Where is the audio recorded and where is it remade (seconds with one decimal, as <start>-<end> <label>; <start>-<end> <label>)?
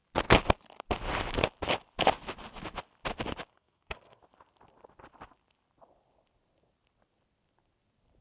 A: 0.0-3.5 recorded; 3.5-4.2 remade; 4.2-8.2 recorded